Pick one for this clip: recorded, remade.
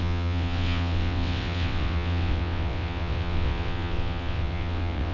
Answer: remade